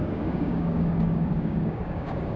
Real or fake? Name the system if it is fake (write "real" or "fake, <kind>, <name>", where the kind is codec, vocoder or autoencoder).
fake, codec, DAC